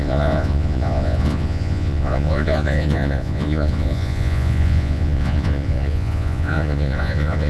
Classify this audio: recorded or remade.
remade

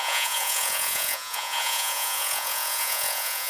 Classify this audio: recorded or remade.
remade